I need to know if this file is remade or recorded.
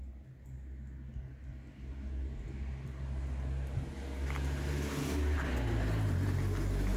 recorded